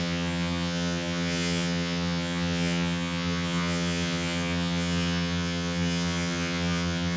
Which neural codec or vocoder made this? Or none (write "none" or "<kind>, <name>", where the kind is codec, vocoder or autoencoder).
vocoder, HiFi-GAN